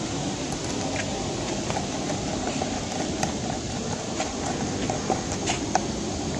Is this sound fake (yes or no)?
no